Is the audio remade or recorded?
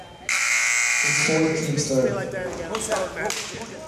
recorded